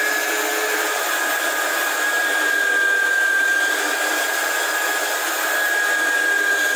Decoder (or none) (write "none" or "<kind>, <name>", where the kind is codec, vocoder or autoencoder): none